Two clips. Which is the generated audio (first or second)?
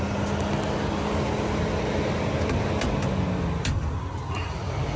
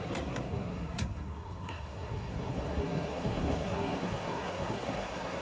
second